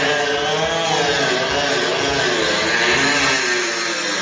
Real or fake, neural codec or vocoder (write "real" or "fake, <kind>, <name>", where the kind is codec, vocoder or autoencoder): real